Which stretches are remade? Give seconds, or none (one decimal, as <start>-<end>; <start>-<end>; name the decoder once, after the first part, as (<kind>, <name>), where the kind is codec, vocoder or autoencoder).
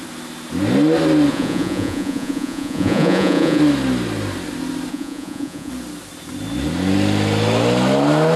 1.3-3.6 (vocoder, Vocos); 4.9-5.7